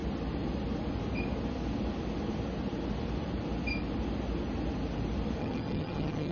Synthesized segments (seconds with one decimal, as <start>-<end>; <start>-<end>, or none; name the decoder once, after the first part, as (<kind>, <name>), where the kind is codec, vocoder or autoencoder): 5.4-6.3 (vocoder, HiFi-GAN)